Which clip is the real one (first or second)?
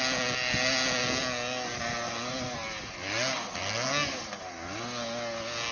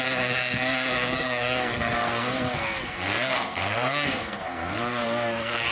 first